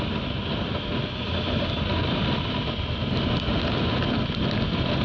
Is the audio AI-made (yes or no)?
no